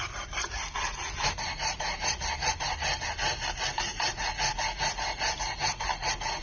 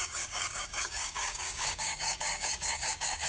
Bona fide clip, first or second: first